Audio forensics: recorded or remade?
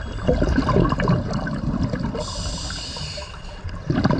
recorded